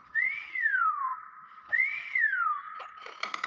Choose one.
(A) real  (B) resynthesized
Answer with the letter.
B